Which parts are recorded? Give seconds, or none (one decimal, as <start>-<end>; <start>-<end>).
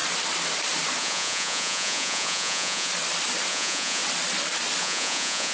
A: 0.0-1.0; 2.9-3.5; 4.0-4.8